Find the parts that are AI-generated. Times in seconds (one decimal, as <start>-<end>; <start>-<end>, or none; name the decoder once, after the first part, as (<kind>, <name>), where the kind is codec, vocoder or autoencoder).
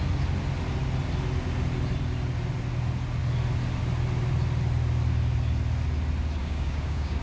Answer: 6.4-7.2 (codec, DAC)